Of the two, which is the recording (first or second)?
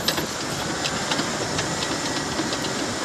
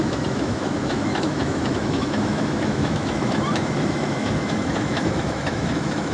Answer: first